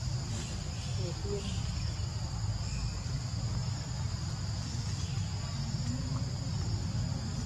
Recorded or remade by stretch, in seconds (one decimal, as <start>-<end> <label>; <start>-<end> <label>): 0.0-0.9 recorded; 0.9-1.6 remade; 1.6-7.5 recorded